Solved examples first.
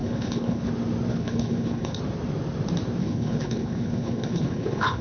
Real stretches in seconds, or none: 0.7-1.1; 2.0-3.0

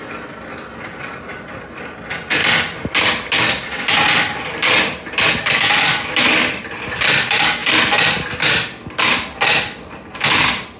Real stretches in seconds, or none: 0.0-10.8

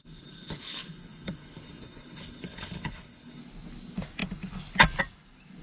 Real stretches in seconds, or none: 3.4-5.6

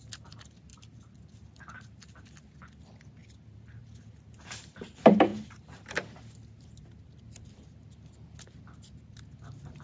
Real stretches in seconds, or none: 0.0-9.8

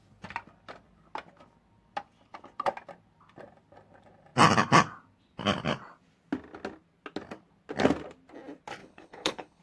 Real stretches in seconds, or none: 0.0-8.8